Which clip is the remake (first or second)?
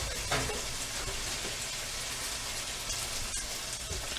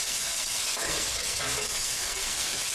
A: second